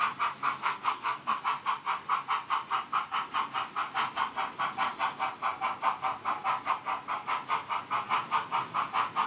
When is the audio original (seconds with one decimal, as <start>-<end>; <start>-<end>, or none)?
0.0-0.6; 1.4-9.3